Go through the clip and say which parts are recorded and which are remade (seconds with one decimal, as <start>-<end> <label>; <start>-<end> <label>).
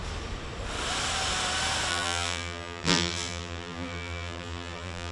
0.0-1.9 recorded; 1.9-5.1 remade